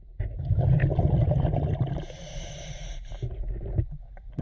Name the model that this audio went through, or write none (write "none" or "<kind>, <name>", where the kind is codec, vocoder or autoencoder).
none